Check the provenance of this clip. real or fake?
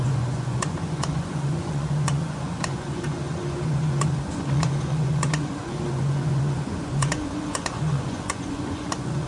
fake